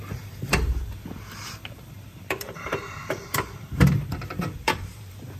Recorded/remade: remade